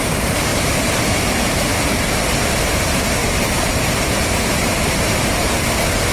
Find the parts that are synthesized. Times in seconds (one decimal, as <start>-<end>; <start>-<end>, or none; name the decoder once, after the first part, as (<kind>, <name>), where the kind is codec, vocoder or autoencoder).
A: 0.0-1.7 (vocoder, BigVGAN v2); 2.6-6.1